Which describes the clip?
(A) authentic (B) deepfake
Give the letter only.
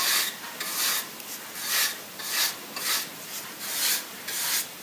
A